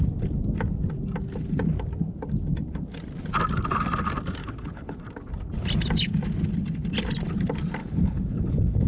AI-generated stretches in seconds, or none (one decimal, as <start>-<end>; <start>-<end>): 4.4-5.0; 7.8-8.9

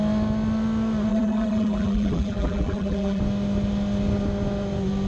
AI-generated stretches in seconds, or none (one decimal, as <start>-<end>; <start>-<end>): 1.1-3.2

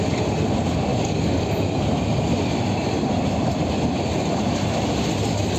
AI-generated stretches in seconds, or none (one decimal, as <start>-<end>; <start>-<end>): 0.9-1.5